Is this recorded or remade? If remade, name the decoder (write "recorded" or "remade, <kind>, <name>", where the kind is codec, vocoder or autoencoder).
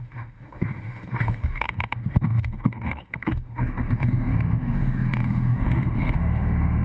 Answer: remade, autoencoder, DAC-VAE